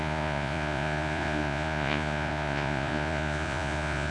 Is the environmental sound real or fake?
fake